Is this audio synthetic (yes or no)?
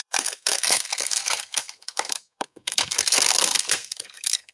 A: yes